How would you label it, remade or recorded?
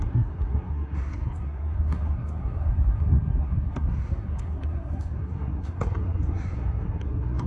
remade